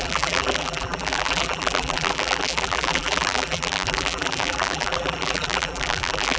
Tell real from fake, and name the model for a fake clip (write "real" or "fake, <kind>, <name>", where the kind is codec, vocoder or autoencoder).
fake, vocoder, BigVGAN v2